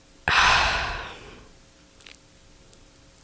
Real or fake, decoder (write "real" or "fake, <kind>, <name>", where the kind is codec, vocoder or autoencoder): real